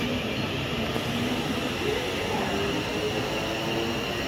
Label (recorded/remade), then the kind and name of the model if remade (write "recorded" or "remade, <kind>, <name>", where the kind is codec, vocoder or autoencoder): recorded